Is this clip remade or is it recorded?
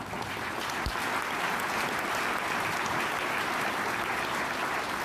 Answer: recorded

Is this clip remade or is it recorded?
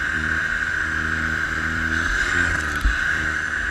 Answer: remade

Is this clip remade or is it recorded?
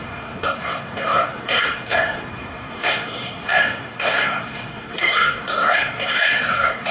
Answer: remade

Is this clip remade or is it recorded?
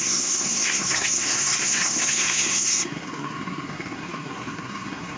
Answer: remade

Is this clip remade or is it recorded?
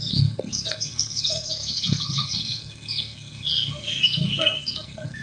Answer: remade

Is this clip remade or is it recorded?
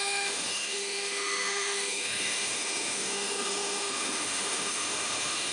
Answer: remade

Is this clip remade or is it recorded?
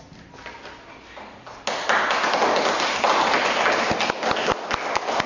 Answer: recorded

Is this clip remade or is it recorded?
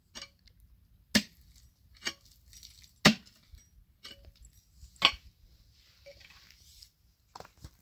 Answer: recorded